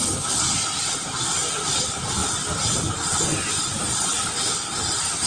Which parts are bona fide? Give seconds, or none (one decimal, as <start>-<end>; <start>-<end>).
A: 0.0-1.1